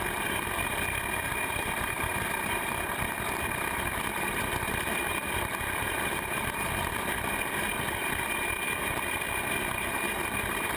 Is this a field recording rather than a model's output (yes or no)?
no